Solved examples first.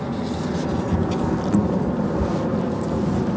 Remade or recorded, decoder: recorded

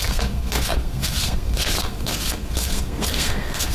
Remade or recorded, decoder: remade, codec, SNAC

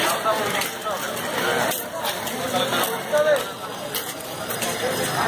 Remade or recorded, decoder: recorded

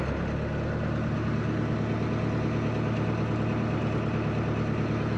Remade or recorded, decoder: recorded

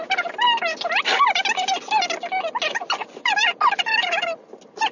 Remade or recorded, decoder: recorded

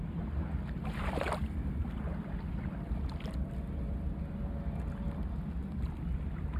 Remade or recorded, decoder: recorded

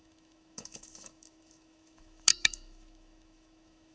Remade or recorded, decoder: remade, autoencoder, DAC-VAE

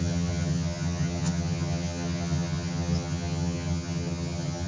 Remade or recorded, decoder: remade, vocoder, HiFi-GAN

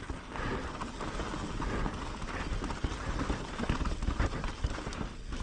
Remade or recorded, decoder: recorded